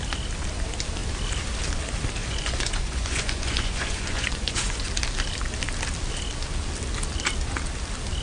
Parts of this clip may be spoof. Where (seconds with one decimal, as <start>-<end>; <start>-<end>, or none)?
2.2-4.9